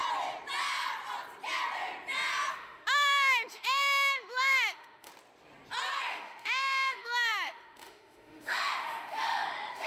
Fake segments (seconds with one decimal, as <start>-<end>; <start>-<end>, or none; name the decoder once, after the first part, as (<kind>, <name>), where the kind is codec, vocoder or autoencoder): 2.5-5.1 (autoencoder, DAC-VAE); 6.0-9.9